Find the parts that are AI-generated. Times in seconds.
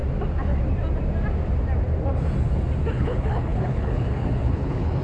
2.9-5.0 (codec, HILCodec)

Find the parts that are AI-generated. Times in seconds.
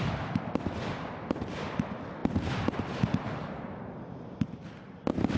none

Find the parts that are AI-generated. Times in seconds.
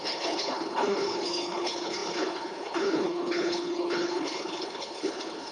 0.0-5.5 (codec, HILCodec)